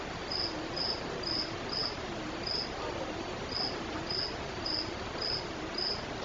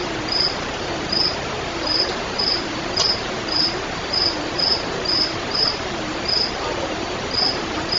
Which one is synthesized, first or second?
second